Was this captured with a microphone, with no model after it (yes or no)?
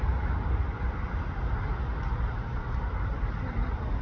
yes